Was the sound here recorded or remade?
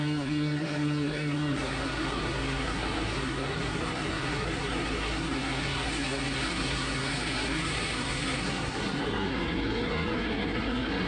remade